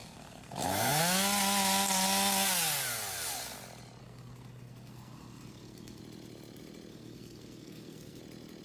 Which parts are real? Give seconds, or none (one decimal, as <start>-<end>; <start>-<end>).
1.0-4.0; 6.0-6.9; 8.2-8.6